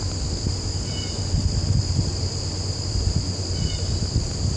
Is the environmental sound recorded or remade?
recorded